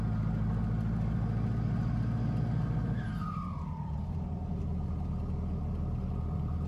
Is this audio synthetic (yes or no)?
no